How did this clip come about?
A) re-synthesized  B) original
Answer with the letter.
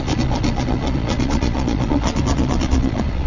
A